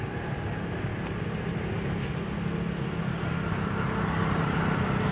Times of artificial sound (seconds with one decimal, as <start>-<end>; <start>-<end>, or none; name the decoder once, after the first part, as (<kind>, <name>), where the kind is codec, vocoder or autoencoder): none